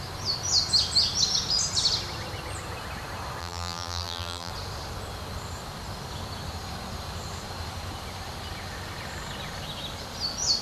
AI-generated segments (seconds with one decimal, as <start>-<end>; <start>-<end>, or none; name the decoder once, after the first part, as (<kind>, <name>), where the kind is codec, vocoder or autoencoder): 3.4-4.5 (vocoder, BigVGAN v2)

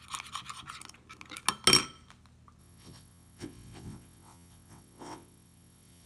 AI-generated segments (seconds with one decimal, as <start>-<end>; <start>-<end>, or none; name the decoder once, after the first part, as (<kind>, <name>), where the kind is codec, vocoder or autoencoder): 2.6-6.1 (vocoder, WaveNeXt)

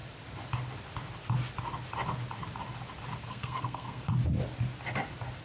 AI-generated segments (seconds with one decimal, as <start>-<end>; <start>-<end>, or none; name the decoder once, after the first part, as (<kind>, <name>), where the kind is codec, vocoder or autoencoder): 3.2-4.1 (codec, SNAC)

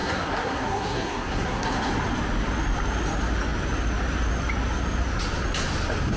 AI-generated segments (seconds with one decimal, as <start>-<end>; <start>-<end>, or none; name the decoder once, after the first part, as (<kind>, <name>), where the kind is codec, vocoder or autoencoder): 0.0-1.9 (codec, SNAC)

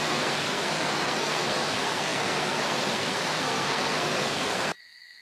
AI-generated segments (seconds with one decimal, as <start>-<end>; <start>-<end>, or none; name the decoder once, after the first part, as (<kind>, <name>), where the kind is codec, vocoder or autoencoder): 0.0-5.2 (codec, SNAC)

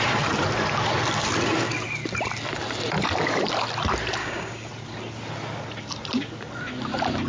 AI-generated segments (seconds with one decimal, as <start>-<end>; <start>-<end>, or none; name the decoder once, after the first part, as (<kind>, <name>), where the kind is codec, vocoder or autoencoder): 4.2-4.7 (codec, DAC)

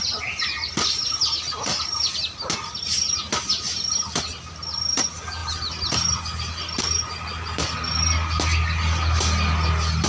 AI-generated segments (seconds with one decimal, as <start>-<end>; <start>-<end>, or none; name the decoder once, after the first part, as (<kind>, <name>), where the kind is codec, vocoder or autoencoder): none

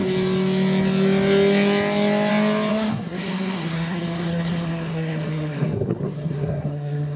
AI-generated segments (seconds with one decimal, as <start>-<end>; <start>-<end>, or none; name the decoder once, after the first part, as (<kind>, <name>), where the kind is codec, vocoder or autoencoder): 2.7-7.2 (codec, SNAC)